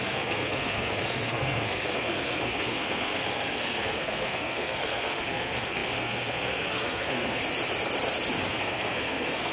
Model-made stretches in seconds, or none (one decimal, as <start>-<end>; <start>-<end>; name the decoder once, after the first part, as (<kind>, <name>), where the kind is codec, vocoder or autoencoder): 0.0-7.4 (codec, SNAC); 8.5-9.5